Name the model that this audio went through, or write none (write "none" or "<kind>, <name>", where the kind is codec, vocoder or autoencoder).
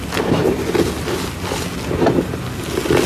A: none